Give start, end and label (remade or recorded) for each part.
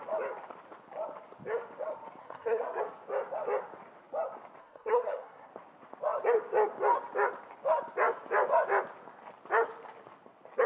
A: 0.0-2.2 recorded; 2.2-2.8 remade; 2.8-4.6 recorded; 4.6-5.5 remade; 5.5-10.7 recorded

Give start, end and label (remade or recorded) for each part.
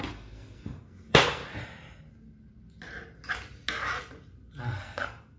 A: 0.0-1.4 remade; 1.4-4.6 recorded; 4.6-5.4 remade